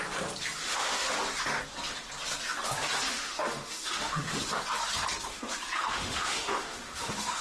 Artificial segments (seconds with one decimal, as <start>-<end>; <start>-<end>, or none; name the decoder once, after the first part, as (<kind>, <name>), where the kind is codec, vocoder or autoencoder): 0.6-1.1 (autoencoder, DAC-VAE); 3.1-4.4; 5.3-7.4